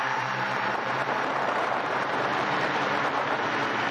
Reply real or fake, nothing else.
fake